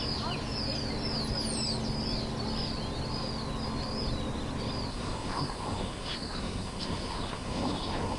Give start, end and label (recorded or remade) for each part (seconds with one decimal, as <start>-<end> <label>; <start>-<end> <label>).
0.0-4.9 recorded; 4.9-8.2 remade